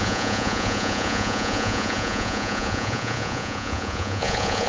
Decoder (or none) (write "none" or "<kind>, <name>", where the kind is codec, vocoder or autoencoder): vocoder, Vocos